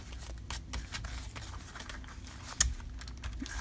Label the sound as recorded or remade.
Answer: recorded